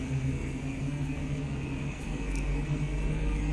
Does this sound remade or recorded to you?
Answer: remade